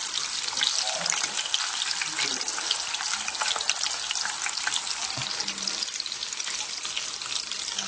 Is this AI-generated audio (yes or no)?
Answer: no